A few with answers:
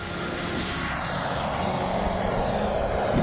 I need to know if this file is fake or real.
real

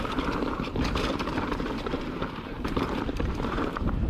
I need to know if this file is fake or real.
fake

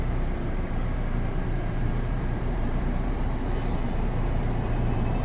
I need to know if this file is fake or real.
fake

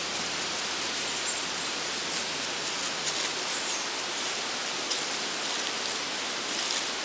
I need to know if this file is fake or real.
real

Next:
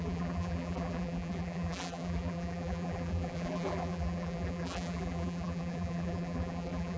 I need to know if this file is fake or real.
fake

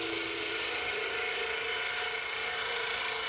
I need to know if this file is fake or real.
fake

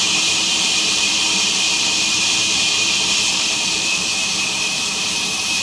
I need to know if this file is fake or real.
fake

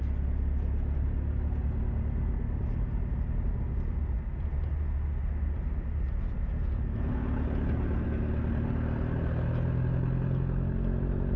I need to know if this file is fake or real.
real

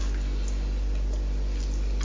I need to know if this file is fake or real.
real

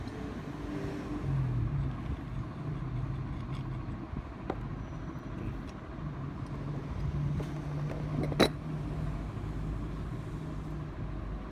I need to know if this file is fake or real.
real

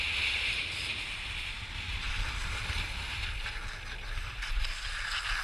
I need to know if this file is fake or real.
real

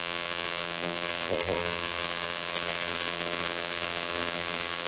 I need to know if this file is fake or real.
fake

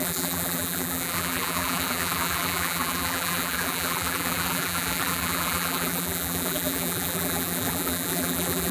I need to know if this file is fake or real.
fake